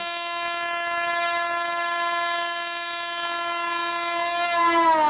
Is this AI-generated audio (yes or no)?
no